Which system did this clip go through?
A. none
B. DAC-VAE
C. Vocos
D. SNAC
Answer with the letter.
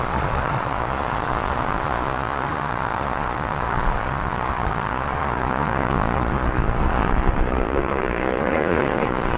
C